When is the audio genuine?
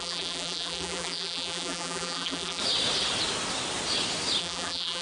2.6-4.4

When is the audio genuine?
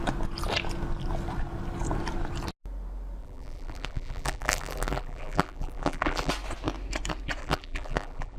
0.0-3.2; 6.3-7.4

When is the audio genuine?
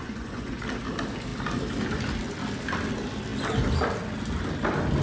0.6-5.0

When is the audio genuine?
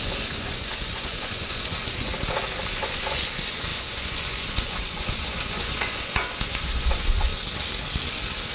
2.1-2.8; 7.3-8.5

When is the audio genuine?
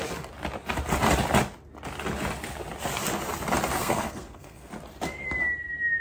0.0-3.8; 4.7-6.0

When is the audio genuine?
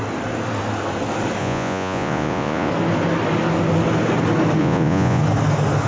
0.0-1.4; 2.7-4.6; 5.2-5.9